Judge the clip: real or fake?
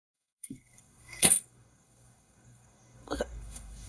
fake